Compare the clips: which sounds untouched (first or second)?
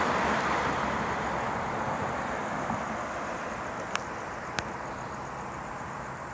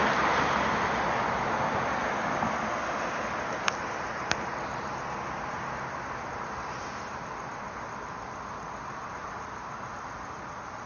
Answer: second